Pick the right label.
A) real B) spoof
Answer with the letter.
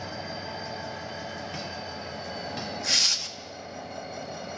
A